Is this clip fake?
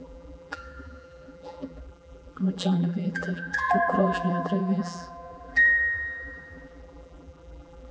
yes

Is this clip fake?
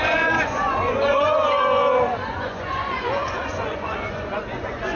yes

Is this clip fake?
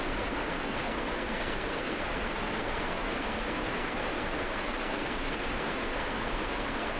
yes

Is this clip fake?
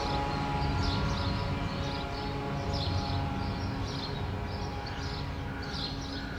no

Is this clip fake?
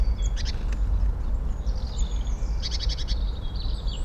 no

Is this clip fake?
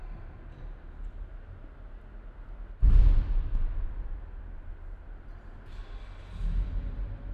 no